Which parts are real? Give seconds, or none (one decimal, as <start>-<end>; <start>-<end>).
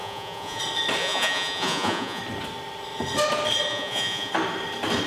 0.6-1.0; 2.2-3.7; 4.3-5.1